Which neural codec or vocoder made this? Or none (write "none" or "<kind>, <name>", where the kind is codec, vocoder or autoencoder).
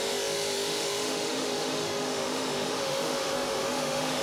autoencoder, DAC-VAE